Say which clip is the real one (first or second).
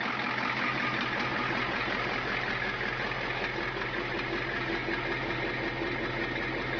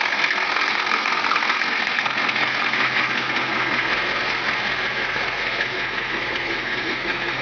first